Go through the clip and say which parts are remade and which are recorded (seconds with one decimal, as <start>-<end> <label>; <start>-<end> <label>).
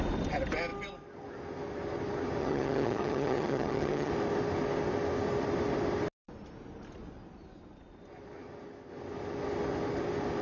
0.0-2.4 recorded; 2.4-4.1 remade; 4.1-10.4 recorded